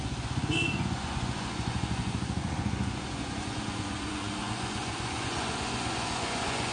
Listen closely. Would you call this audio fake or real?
fake